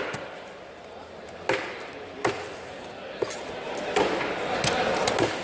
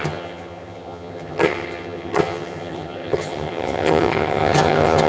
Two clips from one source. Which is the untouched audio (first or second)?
first